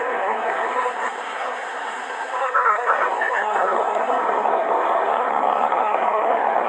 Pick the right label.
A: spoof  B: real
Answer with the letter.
A